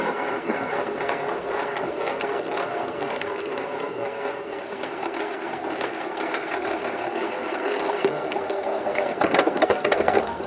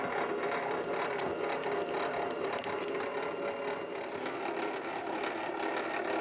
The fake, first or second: first